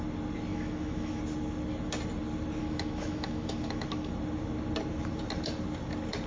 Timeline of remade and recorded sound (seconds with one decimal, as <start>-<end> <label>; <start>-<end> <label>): 0.0-0.5 recorded; 0.5-1.2 remade; 1.2-2.6 recorded; 2.6-4.1 remade; 4.1-6.3 recorded